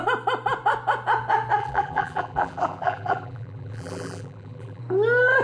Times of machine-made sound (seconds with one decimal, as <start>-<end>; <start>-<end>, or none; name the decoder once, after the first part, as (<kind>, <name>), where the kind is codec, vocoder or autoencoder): 1.6-4.8 (vocoder, BigVGAN v2)